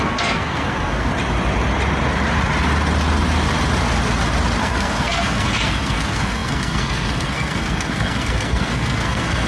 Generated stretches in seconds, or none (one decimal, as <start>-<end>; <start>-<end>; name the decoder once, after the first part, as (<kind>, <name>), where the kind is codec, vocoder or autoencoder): 0.0-1.1 (codec, SNAC); 4.6-9.5